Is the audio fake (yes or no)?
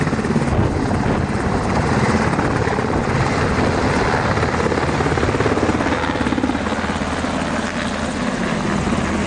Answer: no